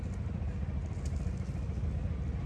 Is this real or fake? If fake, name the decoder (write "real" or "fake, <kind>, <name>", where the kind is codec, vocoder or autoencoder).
real